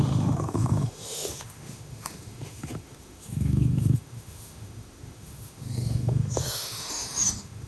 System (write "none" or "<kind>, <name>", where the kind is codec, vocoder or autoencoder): autoencoder, DAC-VAE